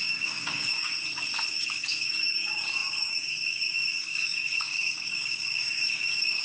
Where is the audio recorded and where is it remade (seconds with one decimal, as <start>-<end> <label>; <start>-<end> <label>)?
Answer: 0.0-0.9 remade; 0.9-1.5 recorded; 1.5-6.4 remade

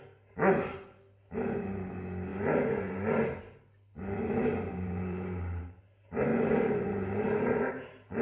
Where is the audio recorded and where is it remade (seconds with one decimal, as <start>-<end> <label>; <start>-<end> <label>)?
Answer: 0.0-4.4 recorded; 4.4-5.8 remade; 5.8-6.3 recorded; 6.3-8.2 remade

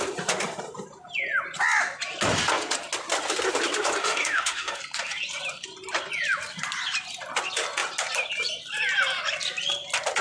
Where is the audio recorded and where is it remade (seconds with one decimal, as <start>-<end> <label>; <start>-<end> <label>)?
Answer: 0.0-4.0 recorded; 4.0-4.8 remade; 4.8-10.2 recorded

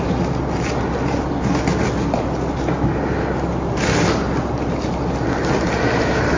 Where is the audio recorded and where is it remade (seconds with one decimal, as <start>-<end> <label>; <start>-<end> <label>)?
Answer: 0.0-1.7 recorded; 1.7-5.5 remade; 5.5-6.4 recorded

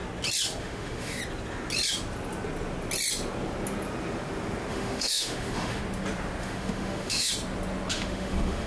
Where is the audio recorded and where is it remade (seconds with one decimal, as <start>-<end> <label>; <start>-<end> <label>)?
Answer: 0.0-0.6 recorded; 0.6-1.2 remade; 1.2-4.7 recorded; 4.7-5.8 remade; 5.8-6.4 recorded; 6.4-7.3 remade; 7.3-7.9 recorded; 7.9-8.7 remade

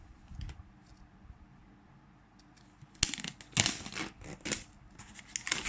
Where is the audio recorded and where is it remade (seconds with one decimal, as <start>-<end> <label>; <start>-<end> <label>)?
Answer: 0.0-5.7 recorded

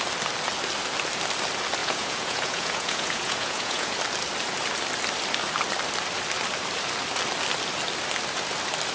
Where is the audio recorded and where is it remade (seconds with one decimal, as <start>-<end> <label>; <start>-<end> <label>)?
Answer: 0.0-1.8 recorded; 1.8-3.9 remade; 3.9-8.9 recorded